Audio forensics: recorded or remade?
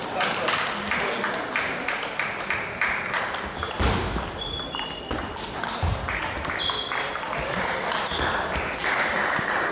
recorded